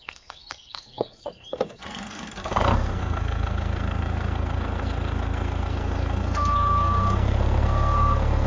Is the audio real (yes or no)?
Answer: no